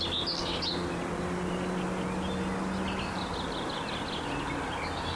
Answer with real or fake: real